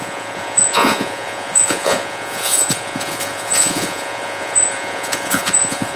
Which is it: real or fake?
fake